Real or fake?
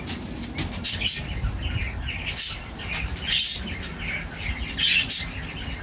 real